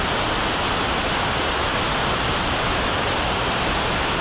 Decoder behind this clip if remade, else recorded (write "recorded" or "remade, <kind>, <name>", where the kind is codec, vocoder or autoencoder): recorded